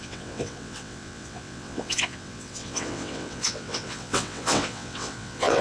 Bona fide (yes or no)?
no